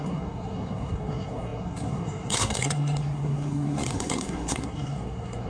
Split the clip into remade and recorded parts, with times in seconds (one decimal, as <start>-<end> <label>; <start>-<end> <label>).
0.0-5.5 remade